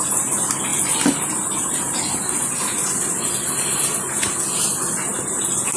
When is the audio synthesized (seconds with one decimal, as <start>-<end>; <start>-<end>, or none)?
none